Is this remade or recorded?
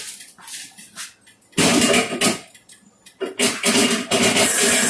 recorded